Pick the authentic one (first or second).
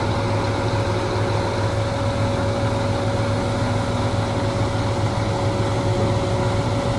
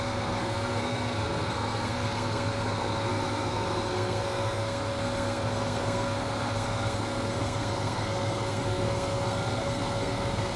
first